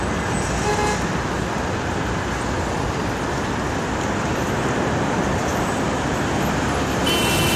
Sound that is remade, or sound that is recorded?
recorded